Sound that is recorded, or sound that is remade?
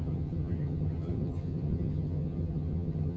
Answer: remade